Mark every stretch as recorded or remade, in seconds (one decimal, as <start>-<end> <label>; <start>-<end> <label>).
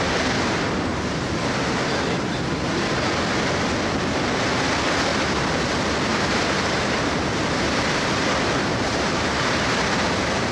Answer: 0.0-0.9 recorded; 0.9-1.6 remade; 1.6-5.1 recorded; 5.1-5.6 remade; 5.6-6.1 recorded; 6.1-9.7 remade; 9.7-10.5 recorded